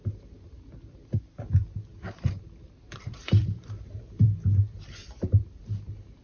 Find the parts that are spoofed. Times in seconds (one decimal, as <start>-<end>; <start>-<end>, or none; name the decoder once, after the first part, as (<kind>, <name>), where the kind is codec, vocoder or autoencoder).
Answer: 0.0-0.7 (vocoder, BigVGAN v2); 1.9-5.6